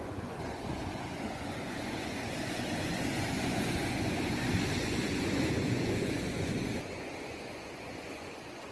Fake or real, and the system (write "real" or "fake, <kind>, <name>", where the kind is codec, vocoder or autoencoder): fake, vocoder, Vocos